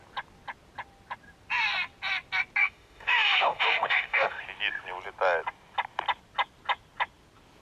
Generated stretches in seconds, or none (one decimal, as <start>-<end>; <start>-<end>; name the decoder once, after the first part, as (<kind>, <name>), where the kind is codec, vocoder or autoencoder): 2.6-4.4 (autoencoder, DAC-VAE)